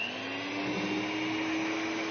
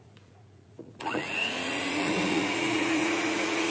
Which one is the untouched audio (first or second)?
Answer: first